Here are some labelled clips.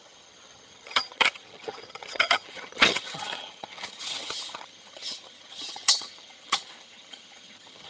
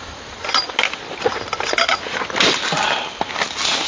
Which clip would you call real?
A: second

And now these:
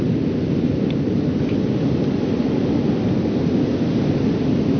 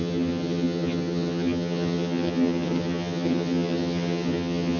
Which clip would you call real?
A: first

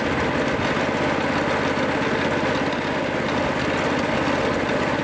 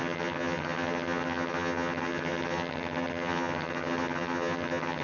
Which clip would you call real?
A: first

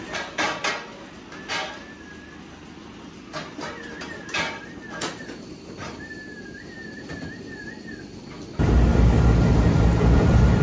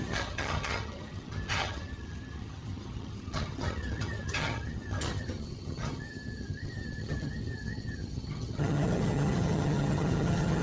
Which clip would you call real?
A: first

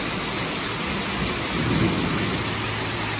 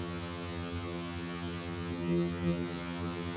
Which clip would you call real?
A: first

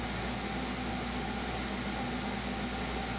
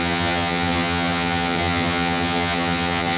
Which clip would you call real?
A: first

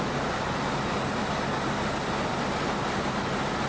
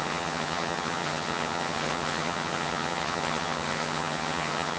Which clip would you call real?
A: first